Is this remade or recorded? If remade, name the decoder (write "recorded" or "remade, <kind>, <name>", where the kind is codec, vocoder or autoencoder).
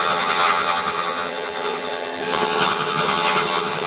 remade, vocoder, HiFi-GAN